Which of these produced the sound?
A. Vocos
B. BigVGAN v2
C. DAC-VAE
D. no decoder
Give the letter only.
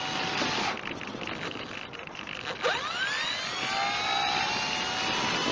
D